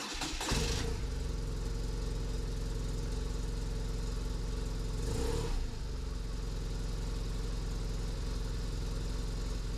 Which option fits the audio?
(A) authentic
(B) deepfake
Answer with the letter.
A